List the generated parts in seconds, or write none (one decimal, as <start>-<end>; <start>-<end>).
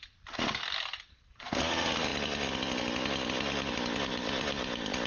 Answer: 1.1-1.6